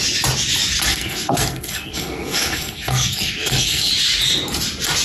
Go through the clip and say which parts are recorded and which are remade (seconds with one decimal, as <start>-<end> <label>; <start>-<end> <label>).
0.0-0.9 recorded; 0.9-3.9 remade; 3.9-5.0 recorded